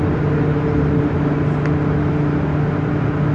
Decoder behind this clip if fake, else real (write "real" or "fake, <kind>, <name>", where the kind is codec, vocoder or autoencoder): real